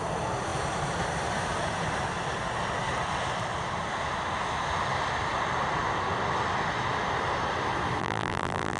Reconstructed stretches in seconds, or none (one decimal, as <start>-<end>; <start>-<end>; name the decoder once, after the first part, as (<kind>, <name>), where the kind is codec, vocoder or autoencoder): 8.0-8.8 (vocoder, BigVGAN v2)